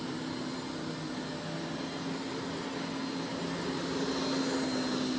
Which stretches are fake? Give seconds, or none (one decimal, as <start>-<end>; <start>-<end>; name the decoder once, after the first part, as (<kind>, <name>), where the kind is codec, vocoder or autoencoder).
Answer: none